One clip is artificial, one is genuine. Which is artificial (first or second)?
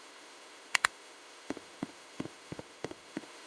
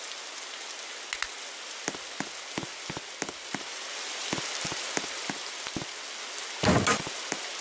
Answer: first